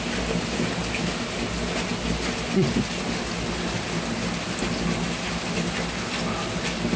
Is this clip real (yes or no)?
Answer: yes